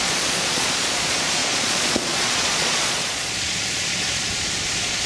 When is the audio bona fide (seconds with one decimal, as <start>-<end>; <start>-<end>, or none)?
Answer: none